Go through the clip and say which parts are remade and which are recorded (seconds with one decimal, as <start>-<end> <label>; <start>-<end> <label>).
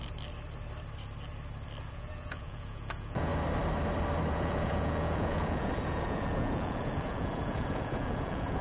0.0-1.9 recorded; 1.9-3.3 remade; 3.3-4.3 recorded; 4.3-8.6 remade